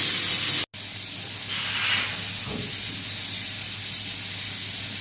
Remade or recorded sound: recorded